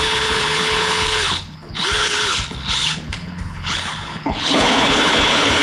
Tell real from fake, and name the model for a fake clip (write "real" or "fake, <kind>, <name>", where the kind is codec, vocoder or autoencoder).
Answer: fake, codec, HILCodec